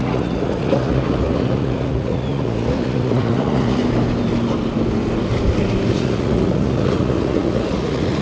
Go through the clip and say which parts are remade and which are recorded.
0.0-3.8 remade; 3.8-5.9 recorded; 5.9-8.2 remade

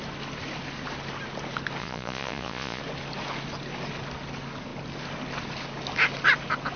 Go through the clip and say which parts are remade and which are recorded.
0.0-1.8 recorded; 1.8-2.8 remade; 2.8-6.8 recorded

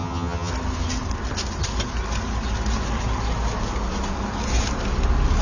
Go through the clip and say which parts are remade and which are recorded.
0.0-0.5 remade; 0.5-5.4 recorded

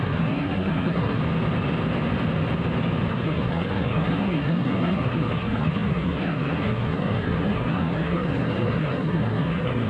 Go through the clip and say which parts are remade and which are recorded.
0.0-1.2 remade; 1.2-3.1 recorded; 3.1-9.9 remade